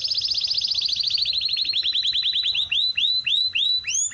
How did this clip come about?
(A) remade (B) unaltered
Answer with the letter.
B